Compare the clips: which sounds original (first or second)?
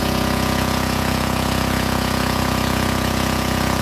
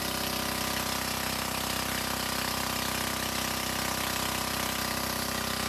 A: second